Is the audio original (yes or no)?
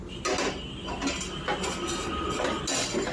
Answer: yes